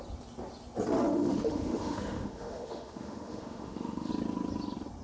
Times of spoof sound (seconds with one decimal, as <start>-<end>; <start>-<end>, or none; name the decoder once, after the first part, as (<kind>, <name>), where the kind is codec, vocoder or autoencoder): 1.1-4.1 (autoencoder, DAC-VAE)